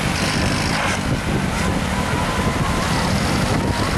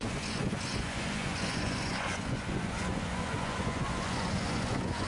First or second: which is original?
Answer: first